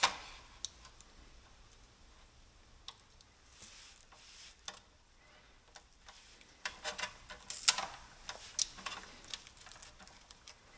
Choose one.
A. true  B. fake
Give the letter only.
A